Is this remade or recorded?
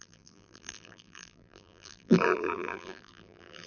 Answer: remade